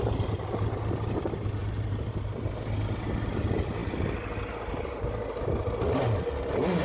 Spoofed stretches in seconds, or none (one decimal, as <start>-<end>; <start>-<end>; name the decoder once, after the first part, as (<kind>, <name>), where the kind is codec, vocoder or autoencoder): 1.6-2.2 (vocoder, BigVGAN v2)